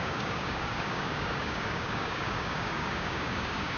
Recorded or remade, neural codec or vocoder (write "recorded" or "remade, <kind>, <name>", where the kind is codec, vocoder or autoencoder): remade, codec, DAC